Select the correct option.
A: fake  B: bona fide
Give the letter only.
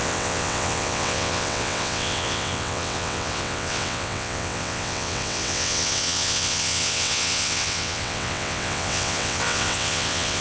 A